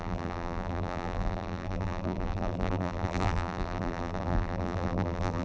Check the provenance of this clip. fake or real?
fake